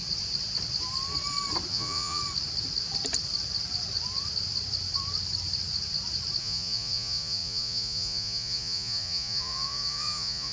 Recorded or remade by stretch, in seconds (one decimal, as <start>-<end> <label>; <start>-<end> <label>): 0.0-1.7 recorded; 1.7-2.2 remade; 2.2-6.4 recorded; 6.4-10.5 remade